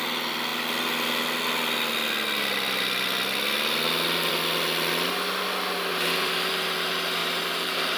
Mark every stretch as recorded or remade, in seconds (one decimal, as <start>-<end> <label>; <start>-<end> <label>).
0.0-5.9 recorded; 5.9-6.5 remade; 6.5-7.2 recorded; 7.2-8.0 remade